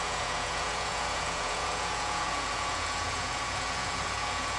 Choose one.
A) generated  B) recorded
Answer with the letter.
A